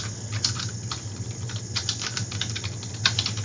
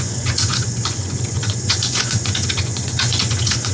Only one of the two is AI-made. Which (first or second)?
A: second